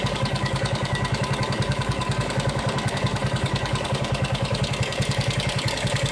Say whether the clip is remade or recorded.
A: remade